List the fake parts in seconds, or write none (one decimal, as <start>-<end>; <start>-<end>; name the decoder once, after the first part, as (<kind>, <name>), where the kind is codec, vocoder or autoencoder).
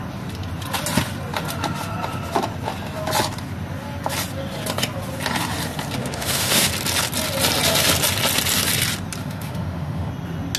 6.0-6.7 (autoencoder, DAC-VAE); 9.2-10.1